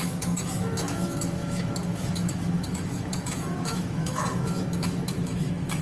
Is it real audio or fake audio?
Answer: fake